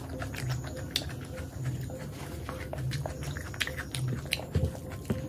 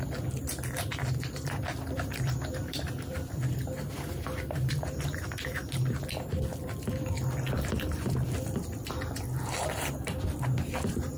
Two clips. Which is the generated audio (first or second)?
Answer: second